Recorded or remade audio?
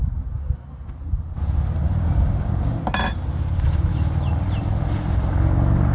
recorded